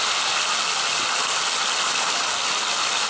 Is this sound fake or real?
real